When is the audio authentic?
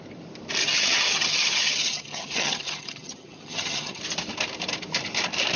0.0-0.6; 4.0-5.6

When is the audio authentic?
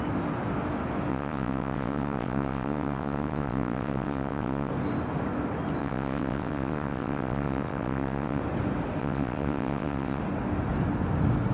0.0-1.1; 4.7-5.8; 8.4-9.0; 10.2-11.5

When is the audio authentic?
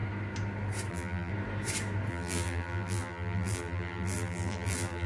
0.0-0.9; 1.3-2.1